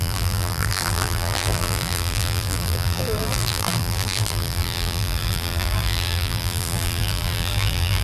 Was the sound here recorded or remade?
remade